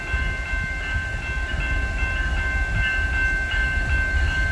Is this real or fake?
real